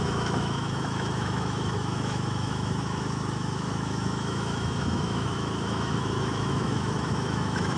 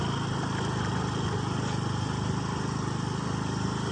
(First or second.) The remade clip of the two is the first